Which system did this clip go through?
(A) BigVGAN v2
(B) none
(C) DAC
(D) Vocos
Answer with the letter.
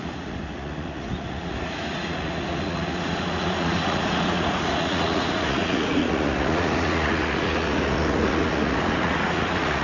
D